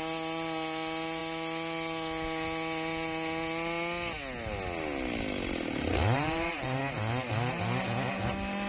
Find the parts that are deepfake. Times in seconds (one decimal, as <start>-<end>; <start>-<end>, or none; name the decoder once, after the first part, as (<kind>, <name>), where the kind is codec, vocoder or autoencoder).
5.9-6.8 (vocoder, BigVGAN v2)